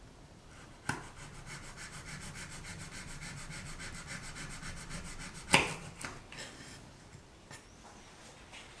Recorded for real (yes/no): yes